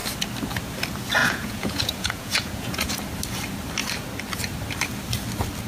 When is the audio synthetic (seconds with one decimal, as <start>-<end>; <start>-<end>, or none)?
1.2-2.9

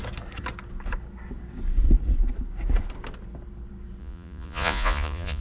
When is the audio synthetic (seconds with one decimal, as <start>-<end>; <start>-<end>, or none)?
4.0-5.4

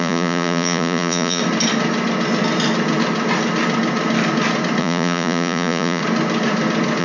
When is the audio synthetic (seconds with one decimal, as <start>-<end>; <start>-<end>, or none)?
0.0-1.4; 4.8-6.0